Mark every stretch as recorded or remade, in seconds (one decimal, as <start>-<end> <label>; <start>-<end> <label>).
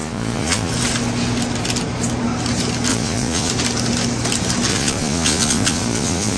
0.0-0.7 remade; 0.7-2.9 recorded; 2.9-3.5 remade; 3.5-4.7 recorded; 4.7-6.4 remade